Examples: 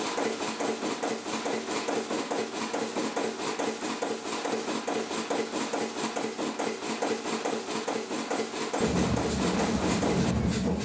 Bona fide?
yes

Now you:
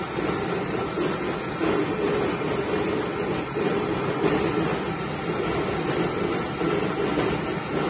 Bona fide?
yes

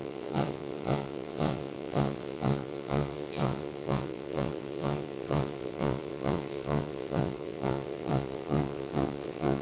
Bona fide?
no